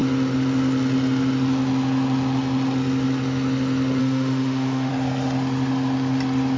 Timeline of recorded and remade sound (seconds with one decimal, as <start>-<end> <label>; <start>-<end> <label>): 0.0-4.0 recorded; 4.0-4.9 remade; 4.9-6.6 recorded